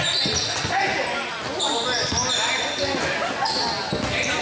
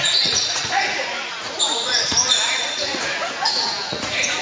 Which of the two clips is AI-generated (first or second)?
second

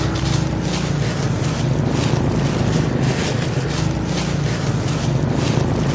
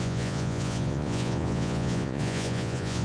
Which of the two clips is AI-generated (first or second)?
second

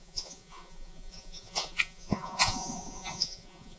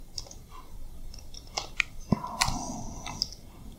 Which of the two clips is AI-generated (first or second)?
first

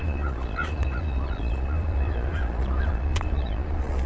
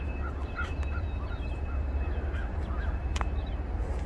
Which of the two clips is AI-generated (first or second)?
first